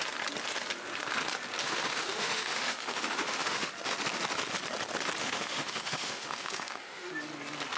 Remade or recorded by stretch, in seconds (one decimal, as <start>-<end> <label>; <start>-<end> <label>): 0.0-1.6 recorded; 1.6-3.7 remade; 3.7-5.2 recorded; 5.2-7.1 remade; 7.1-7.8 recorded